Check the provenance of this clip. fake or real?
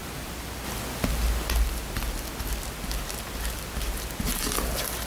real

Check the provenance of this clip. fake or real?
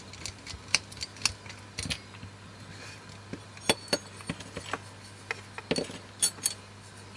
real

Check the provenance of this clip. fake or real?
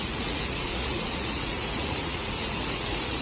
fake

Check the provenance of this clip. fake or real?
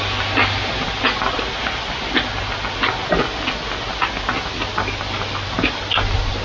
real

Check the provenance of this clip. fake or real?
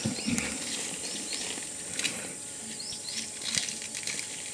real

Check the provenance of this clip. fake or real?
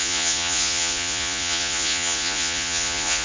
fake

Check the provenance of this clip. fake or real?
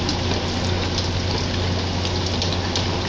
real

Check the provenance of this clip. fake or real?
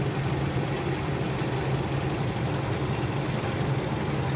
real